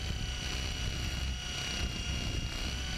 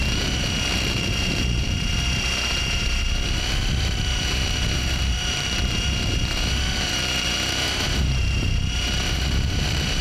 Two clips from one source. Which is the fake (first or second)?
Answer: second